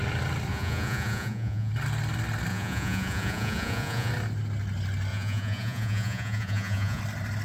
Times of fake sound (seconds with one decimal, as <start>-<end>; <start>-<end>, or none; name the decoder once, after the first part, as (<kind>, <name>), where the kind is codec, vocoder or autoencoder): 0.5-1.7 (vocoder, Vocos); 2.5-4.1; 5.1-7.0